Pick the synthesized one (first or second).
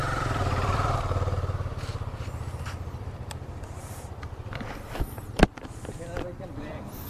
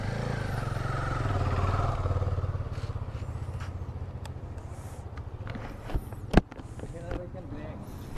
first